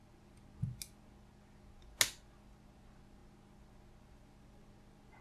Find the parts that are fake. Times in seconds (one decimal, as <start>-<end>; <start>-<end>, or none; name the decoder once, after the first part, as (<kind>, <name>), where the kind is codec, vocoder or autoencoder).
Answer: none